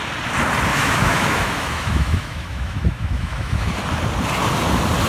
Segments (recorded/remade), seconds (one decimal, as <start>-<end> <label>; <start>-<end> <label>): 0.0-0.7 recorded; 0.7-3.8 remade; 3.8-5.1 recorded